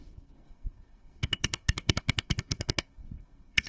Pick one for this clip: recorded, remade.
remade